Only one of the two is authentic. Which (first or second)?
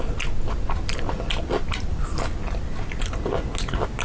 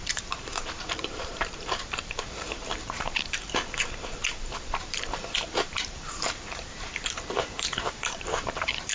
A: first